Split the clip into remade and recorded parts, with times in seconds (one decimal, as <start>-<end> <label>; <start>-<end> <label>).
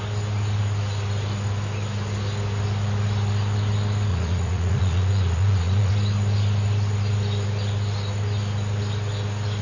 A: 0.0-4.1 recorded; 4.1-5.9 remade; 5.9-9.6 recorded